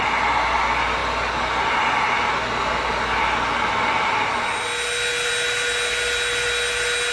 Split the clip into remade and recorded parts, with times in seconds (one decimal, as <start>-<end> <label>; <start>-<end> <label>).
0.0-7.1 recorded